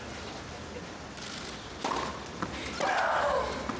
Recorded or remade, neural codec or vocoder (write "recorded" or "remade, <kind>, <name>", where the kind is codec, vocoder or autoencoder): recorded